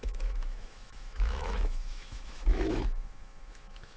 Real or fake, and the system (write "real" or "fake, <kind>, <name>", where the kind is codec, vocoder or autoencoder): fake, autoencoder, DAC-VAE